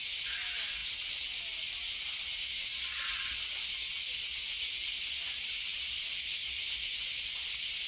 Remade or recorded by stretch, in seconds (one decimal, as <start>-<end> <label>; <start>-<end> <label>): 0.0-7.9 recorded